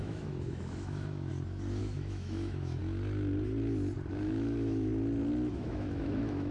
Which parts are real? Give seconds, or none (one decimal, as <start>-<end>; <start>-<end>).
1.3-1.8; 2.8-4.1; 4.9-5.5